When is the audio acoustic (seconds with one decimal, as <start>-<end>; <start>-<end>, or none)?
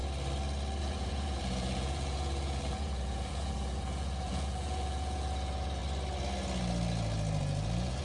0.0-0.8; 5.8-7.4